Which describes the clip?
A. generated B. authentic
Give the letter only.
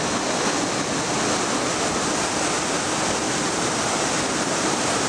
B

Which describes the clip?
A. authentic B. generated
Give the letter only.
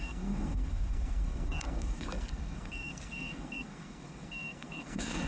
B